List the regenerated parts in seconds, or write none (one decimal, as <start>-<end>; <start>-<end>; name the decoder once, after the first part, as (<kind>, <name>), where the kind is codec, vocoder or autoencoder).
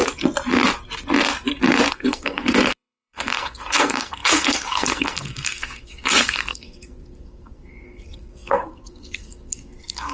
1.9-10.1 (codec, SNAC)